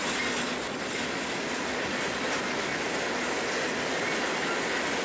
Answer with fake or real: real